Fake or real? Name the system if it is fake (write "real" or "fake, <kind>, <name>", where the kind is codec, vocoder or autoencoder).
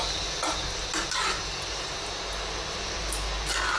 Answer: real